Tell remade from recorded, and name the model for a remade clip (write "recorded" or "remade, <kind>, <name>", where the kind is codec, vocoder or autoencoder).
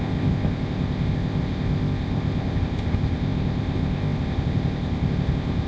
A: remade, codec, ZipCodec